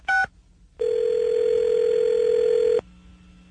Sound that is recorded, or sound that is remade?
recorded